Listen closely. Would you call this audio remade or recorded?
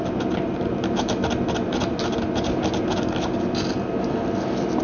recorded